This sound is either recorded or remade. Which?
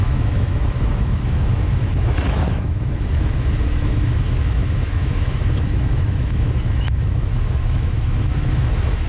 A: remade